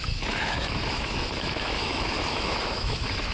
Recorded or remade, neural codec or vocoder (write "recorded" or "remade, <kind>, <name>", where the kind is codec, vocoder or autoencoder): remade, autoencoder, DAC-VAE